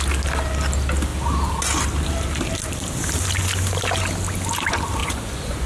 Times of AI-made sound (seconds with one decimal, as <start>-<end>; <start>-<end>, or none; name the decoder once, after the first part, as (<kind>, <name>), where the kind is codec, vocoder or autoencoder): 5.0-5.7 (vocoder, Vocos)